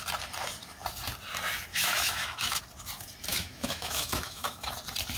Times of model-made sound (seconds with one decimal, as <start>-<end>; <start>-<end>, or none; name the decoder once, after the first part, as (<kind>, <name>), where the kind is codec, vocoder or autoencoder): 1.7-2.6 (autoencoder, DAC-VAE); 3.3-4.7

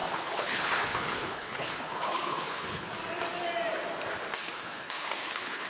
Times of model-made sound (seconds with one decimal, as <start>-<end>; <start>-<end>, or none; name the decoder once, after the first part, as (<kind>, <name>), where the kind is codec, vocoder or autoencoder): 0.0-2.9 (codec, HILCodec); 4.4-5.7

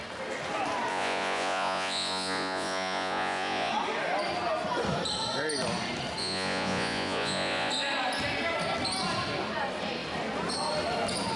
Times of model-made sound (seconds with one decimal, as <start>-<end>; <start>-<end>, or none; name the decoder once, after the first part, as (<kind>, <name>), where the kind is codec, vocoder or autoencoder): 0.9-3.7 (vocoder, Vocos); 6.2-7.7

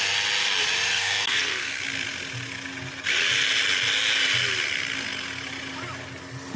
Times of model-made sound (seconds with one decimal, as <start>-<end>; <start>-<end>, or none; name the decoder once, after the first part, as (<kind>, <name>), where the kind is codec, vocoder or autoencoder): 0.9-1.7 (codec, SNAC)